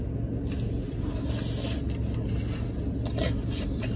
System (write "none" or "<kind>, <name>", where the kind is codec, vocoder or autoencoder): none